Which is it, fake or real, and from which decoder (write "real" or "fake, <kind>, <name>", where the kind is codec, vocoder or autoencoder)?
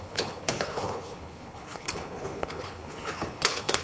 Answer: fake, codec, HILCodec